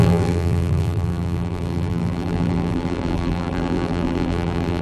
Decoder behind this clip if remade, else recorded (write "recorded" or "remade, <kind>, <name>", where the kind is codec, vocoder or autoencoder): remade, vocoder, BigVGAN v2